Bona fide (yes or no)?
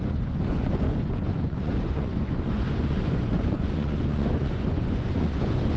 no